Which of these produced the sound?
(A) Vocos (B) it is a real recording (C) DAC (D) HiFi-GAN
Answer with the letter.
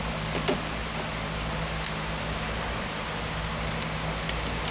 B